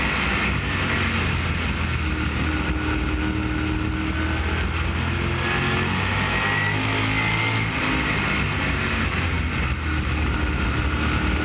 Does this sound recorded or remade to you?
recorded